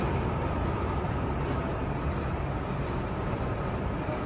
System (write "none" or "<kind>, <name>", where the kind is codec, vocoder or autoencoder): none